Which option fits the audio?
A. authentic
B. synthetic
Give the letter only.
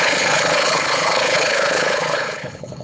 B